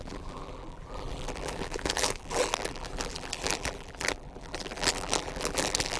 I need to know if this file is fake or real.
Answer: fake